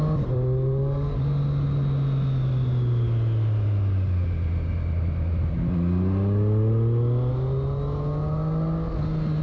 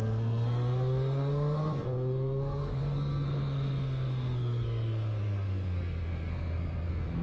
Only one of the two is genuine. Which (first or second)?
first